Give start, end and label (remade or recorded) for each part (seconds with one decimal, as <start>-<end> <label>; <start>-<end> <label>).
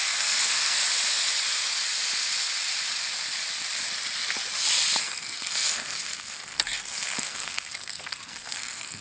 0.0-0.8 remade; 0.8-5.0 recorded; 5.0-9.0 remade